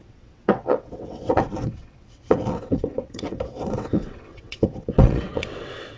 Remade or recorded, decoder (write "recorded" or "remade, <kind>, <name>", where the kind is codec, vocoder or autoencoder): remade, vocoder, WaveNeXt